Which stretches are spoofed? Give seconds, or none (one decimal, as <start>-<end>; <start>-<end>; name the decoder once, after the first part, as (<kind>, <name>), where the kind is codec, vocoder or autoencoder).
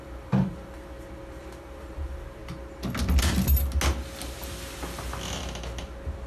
0.0-2.4 (vocoder, BigVGAN v2)